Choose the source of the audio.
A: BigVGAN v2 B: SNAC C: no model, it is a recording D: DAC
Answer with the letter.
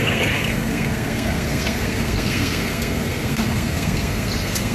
B